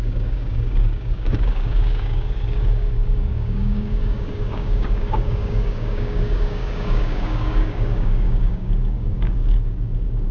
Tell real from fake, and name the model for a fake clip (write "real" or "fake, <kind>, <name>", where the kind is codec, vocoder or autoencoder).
fake, codec, DAC